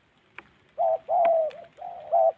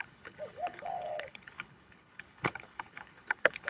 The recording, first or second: first